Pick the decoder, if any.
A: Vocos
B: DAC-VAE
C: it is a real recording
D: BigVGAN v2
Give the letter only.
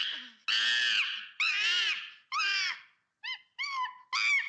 C